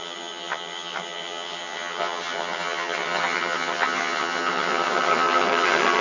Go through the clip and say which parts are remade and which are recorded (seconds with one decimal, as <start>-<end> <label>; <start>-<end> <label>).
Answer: 0.0-6.0 remade

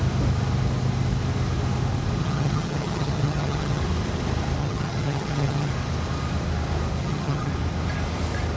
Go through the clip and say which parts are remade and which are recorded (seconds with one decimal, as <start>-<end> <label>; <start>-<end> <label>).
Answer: 0.0-2.2 recorded; 2.2-3.8 remade; 3.8-4.6 recorded; 4.6-5.7 remade; 5.7-7.0 recorded; 7.0-7.5 remade; 7.5-8.6 recorded

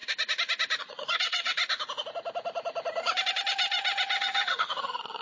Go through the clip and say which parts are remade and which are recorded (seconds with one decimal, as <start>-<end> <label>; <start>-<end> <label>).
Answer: 0.0-0.8 recorded; 0.8-1.6 remade; 1.6-4.2 recorded; 4.2-5.2 remade

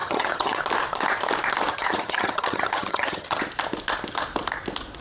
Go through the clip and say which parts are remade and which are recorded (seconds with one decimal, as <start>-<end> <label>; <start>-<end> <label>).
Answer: 0.0-0.6 remade; 0.6-1.7 recorded; 1.7-3.4 remade; 3.4-5.0 recorded

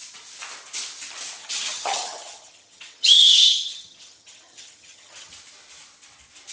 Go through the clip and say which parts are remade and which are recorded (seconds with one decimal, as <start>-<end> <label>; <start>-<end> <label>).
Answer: 0.0-1.4 recorded; 1.4-5.3 remade; 5.3-6.5 recorded

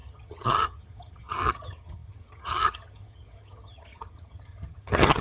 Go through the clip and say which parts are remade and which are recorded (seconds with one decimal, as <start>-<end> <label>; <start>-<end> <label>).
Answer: 0.0-5.2 remade

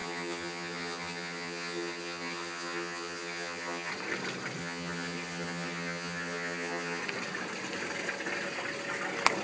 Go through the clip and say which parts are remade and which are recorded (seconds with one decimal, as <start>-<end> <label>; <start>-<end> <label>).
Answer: 0.0-3.9 remade; 3.9-4.6 recorded; 4.6-7.0 remade; 7.0-9.4 recorded

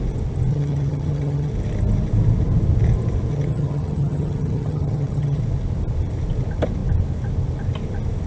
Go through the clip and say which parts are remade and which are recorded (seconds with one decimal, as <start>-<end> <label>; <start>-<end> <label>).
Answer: 0.0-0.5 recorded; 0.5-1.5 remade; 1.5-3.3 recorded; 3.3-5.4 remade; 5.4-8.3 recorded